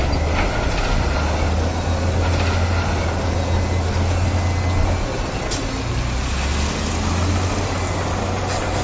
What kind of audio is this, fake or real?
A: real